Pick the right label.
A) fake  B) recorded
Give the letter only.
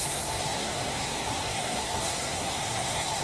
A